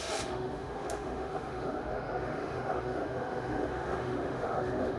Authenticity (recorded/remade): remade